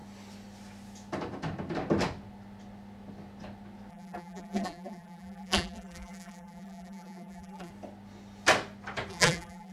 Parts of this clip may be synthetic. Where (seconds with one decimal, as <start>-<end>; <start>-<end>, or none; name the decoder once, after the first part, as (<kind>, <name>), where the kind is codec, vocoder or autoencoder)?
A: 3.9-7.7 (vocoder, BigVGAN v2); 9.1-9.7